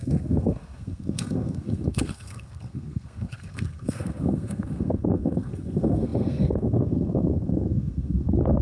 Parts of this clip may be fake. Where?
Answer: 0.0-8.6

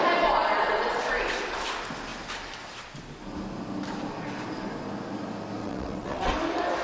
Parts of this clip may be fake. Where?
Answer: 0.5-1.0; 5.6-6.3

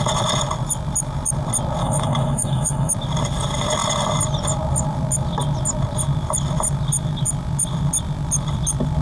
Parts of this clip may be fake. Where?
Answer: 1.8-2.9

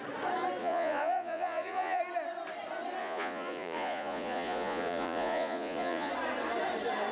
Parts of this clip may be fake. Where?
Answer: 0.6-2.0; 3.0-6.1